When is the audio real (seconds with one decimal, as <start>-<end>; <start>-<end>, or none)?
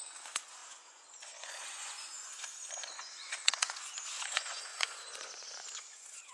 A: none